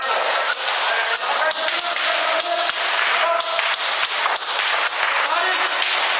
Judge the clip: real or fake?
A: real